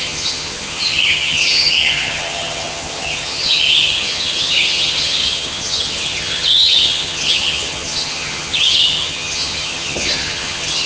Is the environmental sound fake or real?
fake